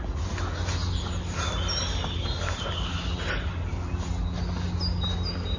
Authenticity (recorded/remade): recorded